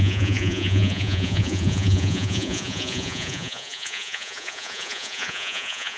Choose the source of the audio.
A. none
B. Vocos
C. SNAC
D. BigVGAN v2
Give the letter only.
B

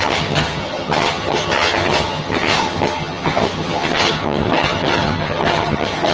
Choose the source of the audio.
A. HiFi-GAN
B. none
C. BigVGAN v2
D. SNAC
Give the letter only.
A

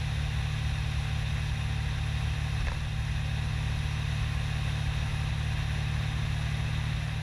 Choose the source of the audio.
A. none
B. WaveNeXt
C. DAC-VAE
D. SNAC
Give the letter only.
A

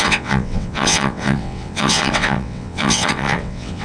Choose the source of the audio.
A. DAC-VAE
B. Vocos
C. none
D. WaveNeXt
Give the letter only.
D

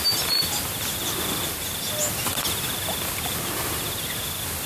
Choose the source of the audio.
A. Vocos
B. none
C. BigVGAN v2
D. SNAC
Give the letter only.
B